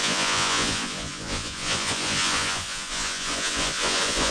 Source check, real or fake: fake